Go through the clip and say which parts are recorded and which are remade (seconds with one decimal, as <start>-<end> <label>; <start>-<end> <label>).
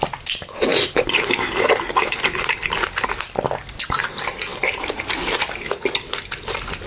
0.0-4.5 recorded; 4.5-5.1 remade; 5.1-6.9 recorded